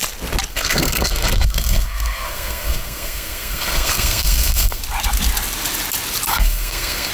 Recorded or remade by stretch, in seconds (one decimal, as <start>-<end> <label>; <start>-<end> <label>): 0.0-0.5 recorded; 0.5-4.8 remade; 4.8-6.3 recorded; 6.3-7.1 remade